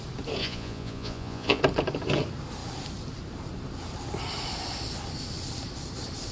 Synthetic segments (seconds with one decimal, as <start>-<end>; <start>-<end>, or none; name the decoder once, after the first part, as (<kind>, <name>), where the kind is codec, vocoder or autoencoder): 0.4-1.6 (vocoder, Vocos)